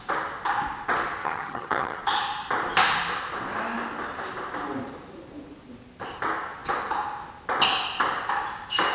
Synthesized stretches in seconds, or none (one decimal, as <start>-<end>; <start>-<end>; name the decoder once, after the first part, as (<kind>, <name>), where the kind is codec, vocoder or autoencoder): 1.2-2.0 (vocoder, HiFi-GAN)

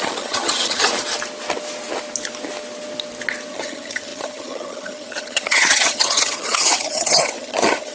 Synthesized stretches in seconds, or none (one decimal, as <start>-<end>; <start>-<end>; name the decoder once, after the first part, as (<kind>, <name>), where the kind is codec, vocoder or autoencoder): 0.0-0.9 (vocoder, HiFi-GAN); 3.5-7.9

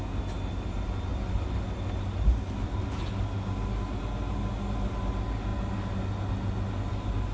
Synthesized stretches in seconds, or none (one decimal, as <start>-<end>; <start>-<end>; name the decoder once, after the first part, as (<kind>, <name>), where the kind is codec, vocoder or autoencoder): none

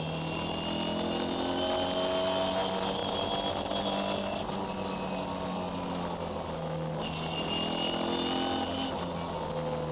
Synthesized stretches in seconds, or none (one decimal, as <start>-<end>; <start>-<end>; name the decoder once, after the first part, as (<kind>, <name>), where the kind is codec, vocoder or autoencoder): none

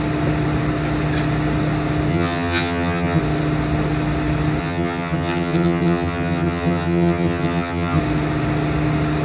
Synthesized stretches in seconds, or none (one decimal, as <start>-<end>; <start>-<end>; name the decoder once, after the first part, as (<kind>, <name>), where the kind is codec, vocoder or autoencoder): 2.1-3.2 (vocoder, HiFi-GAN); 4.6-8.0